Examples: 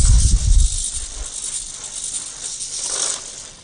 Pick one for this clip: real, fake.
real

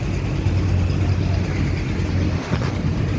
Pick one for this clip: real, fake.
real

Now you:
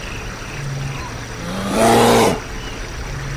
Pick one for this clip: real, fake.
real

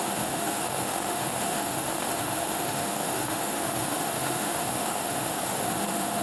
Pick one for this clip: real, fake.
fake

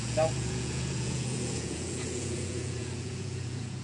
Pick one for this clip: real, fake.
fake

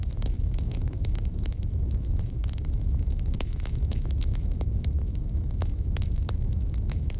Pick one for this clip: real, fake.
fake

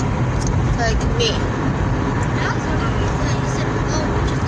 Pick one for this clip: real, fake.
real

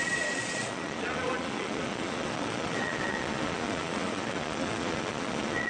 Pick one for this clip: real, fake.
fake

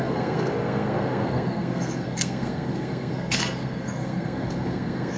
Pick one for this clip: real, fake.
fake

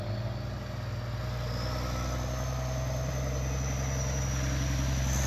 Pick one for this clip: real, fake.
real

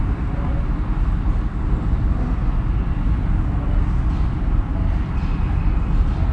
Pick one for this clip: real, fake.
real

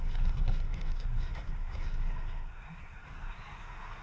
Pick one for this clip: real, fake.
fake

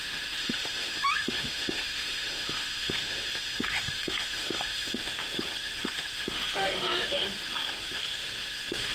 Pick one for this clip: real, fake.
fake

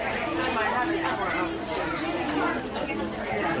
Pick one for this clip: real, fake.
real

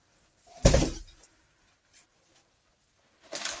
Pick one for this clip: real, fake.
real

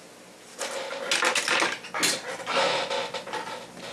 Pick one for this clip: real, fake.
real